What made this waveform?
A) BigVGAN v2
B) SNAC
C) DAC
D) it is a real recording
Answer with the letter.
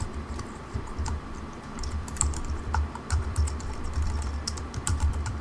A